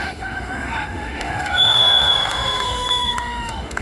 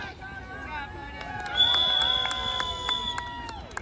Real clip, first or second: second